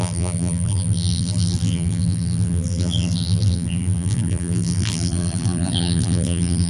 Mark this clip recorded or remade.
remade